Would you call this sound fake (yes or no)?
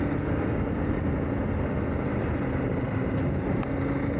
no